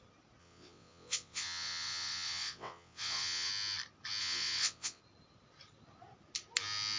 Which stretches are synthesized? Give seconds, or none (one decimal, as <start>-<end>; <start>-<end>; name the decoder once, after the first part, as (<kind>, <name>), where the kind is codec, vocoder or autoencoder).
0.4-3.5 (vocoder, WaveNeXt); 4.2-5.0